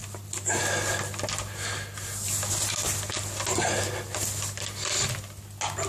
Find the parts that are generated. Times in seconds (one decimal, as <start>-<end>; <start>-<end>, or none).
none